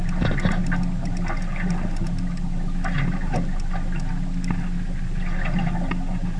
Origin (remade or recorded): recorded